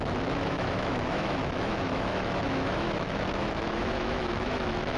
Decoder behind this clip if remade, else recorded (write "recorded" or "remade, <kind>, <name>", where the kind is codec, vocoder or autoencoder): remade, autoencoder, DAC-VAE